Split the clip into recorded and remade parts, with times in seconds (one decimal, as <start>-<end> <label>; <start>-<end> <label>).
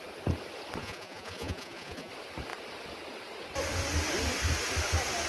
0.0-0.8 recorded; 0.8-2.1 remade; 2.1-5.3 recorded